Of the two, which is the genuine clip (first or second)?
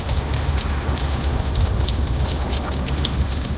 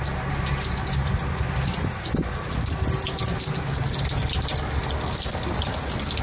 second